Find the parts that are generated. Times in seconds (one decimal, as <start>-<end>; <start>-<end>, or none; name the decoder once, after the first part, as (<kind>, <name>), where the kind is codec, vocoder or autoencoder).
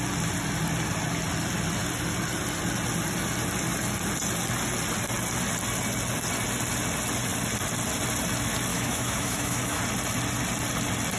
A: 8.7-9.8 (autoencoder, DAC-VAE)